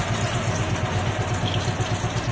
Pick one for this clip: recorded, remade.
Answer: recorded